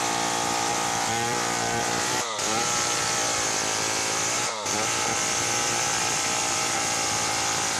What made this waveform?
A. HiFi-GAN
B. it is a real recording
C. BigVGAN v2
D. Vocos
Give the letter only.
C